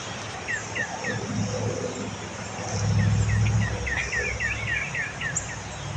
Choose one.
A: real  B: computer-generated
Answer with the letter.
A